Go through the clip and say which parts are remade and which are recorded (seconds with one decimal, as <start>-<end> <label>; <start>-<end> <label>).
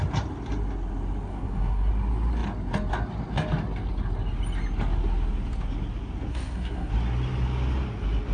0.0-1.3 recorded; 1.3-1.9 remade; 1.9-6.3 recorded; 6.3-6.9 remade; 6.9-8.3 recorded